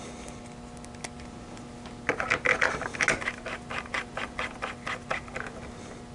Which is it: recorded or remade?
recorded